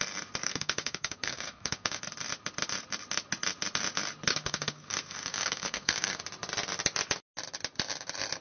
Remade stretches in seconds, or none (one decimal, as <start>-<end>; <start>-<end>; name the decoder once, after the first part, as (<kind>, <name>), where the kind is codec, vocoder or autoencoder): 0.4-2.0 (codec, SNAC); 4.3-6.2